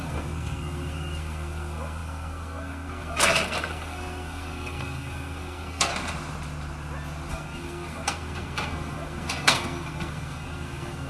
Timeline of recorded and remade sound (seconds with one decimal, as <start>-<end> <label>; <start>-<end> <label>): 0.0-5.9 remade; 5.9-7.3 recorded; 7.3-11.1 remade